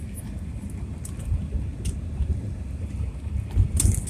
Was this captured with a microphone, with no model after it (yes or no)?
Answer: yes